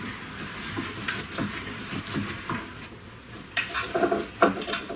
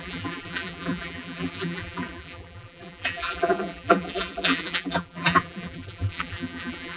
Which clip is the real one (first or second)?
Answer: first